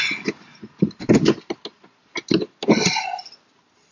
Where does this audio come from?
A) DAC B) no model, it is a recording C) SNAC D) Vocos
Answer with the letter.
B